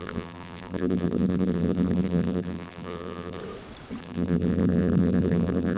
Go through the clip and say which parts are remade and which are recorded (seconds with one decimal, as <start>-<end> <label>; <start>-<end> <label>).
0.0-3.4 remade; 3.4-4.0 recorded; 4.0-5.8 remade